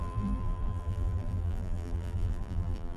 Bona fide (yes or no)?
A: no